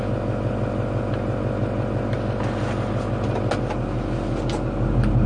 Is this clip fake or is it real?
real